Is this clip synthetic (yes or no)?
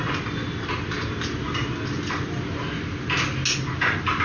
no